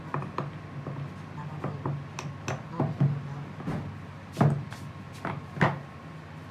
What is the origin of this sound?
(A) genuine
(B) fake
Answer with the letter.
A